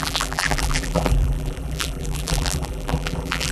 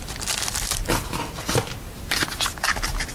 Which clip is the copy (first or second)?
first